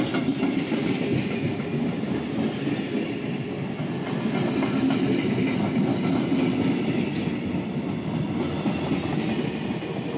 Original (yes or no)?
yes